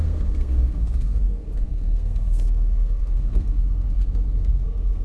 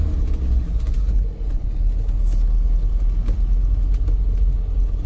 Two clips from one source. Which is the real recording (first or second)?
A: second